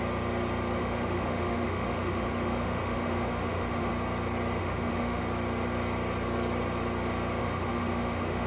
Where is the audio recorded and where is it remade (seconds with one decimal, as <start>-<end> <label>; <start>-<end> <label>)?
0.0-0.8 recorded; 0.8-3.9 remade; 3.9-4.6 recorded; 4.6-5.2 remade; 5.2-7.4 recorded; 7.4-8.5 remade